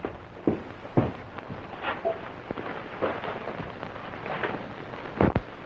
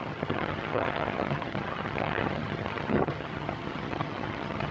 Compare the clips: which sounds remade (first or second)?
second